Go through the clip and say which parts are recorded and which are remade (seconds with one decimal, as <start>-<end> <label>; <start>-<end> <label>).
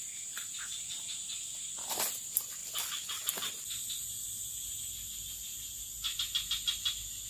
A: 0.0-7.3 recorded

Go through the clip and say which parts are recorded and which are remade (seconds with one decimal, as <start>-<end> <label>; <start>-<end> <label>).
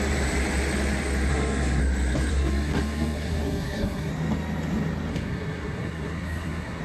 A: 0.0-1.3 recorded; 1.3-1.8 remade; 1.8-2.3 recorded; 2.3-4.1 remade; 4.1-5.1 recorded; 5.1-6.8 remade